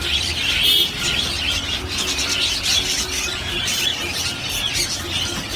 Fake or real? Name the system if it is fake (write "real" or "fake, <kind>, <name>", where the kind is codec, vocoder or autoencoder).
real